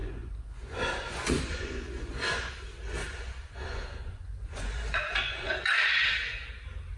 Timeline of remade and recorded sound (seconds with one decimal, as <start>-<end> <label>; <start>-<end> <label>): 0.0-2.5 remade; 2.5-3.0 recorded; 3.0-5.9 remade; 5.9-7.0 recorded